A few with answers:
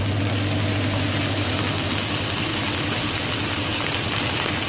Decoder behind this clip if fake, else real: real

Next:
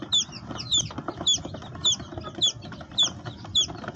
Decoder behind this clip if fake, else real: real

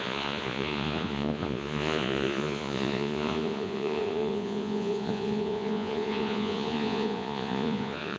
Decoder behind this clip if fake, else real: fake, vocoder, Vocos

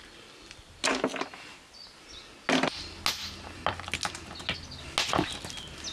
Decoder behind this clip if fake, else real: real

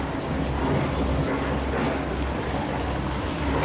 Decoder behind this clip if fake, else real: real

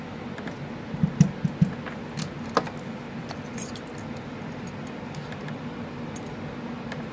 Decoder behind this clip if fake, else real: real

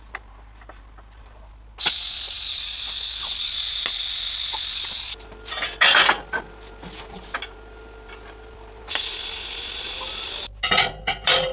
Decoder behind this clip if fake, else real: real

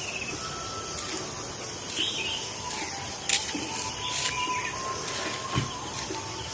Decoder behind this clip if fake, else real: real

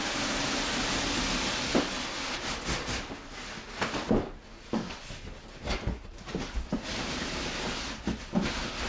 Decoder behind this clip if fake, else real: real